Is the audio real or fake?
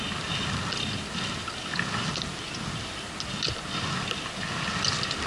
real